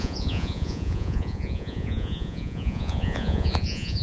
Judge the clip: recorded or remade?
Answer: remade